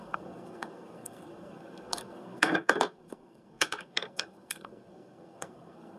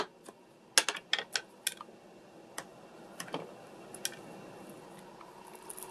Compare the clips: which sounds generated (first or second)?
first